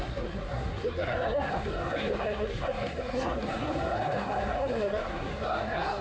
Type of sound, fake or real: fake